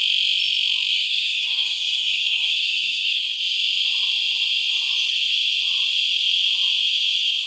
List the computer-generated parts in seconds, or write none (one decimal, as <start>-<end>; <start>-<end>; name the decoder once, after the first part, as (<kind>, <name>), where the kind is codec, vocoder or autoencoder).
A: 0.9-3.2 (codec, SNAC)